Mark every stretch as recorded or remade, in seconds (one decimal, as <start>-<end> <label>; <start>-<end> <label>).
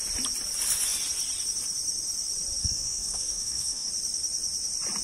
0.0-2.6 recorded; 2.6-3.9 remade; 3.9-5.0 recorded